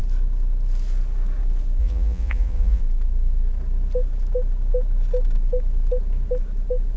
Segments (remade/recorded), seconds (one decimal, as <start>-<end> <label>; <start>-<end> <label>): 0.0-1.8 recorded; 1.8-2.8 remade; 2.8-7.0 recorded